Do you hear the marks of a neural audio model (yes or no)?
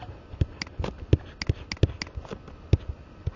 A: no